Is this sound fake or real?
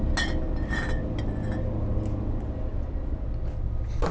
real